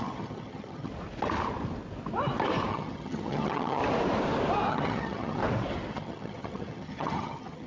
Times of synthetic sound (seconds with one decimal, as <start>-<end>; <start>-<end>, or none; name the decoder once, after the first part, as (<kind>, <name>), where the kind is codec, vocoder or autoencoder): 0.0-0.9 (vocoder, HiFi-GAN); 2.7-3.8; 4.7-5.4; 5.9-7.7